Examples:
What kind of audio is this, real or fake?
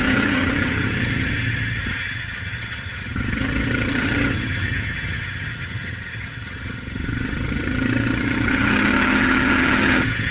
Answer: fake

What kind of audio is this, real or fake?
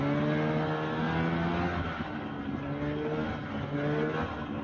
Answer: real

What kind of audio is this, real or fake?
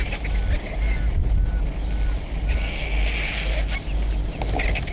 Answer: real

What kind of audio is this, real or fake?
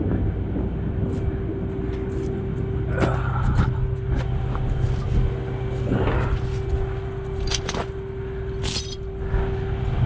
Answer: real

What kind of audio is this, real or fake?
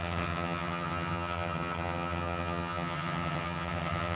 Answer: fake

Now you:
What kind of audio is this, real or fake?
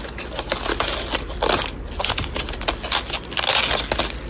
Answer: real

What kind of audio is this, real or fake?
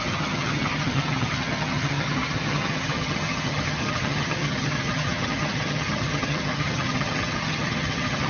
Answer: fake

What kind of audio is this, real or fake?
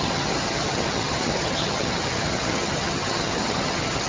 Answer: fake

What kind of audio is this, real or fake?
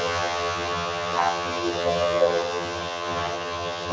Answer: fake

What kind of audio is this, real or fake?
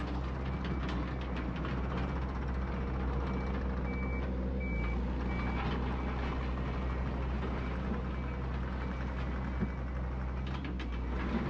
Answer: real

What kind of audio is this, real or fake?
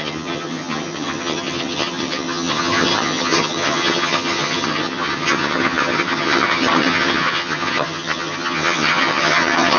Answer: fake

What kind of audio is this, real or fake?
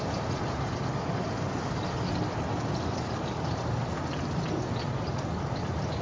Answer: real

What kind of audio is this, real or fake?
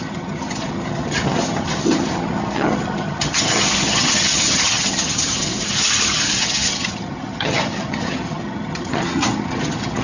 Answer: fake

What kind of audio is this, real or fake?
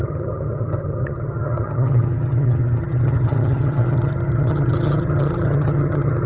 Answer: fake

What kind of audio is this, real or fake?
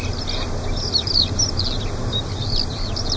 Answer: real